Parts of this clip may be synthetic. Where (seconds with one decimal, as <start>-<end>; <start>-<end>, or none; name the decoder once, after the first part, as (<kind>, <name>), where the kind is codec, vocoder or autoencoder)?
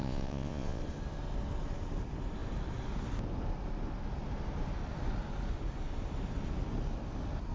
0.0-0.8 (vocoder, Vocos)